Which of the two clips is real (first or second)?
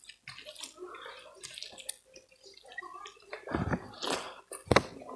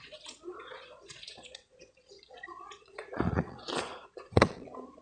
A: first